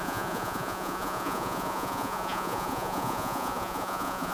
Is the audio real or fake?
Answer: fake